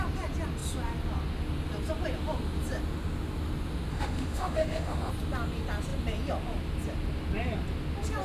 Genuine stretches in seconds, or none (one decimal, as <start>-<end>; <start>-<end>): 0.0-3.9; 5.1-8.2